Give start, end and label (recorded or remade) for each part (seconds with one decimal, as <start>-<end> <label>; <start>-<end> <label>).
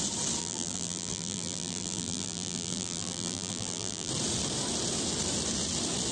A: 0.0-0.4 recorded; 0.4-4.1 remade; 4.1-6.1 recorded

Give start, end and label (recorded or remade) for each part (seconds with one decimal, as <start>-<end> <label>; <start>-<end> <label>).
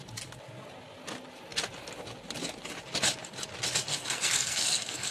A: 0.0-3.9 recorded; 3.9-5.1 remade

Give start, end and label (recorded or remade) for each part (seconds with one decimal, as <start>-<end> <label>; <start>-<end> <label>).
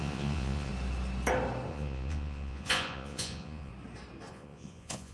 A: 0.0-0.7 remade; 0.7-1.7 recorded; 1.7-3.7 remade; 3.7-4.3 recorded; 4.3-5.1 remade